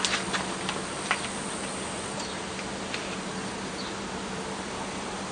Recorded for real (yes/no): yes